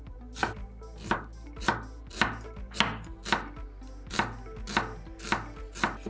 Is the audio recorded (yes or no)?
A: yes